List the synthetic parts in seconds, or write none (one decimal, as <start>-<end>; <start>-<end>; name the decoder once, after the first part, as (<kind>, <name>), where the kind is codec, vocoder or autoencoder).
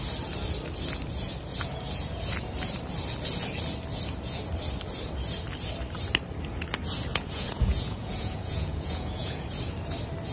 7.1-9.4 (vocoder, Vocos)